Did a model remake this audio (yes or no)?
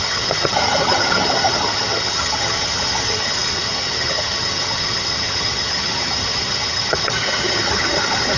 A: yes